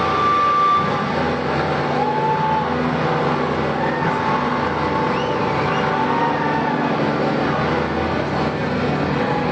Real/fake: real